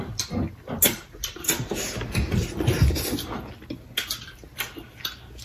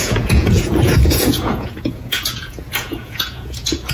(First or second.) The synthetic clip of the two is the second